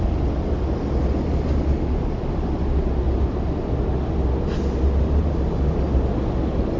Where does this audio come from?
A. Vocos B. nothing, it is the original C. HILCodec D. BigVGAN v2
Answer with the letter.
B